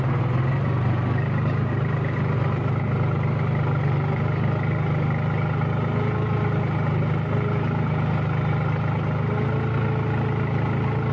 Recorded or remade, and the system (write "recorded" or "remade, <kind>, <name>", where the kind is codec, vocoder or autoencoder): recorded